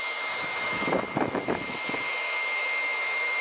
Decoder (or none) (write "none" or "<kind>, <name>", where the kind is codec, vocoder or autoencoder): autoencoder, DAC-VAE